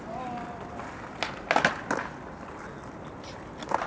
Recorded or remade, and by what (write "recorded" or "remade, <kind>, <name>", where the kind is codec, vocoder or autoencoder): recorded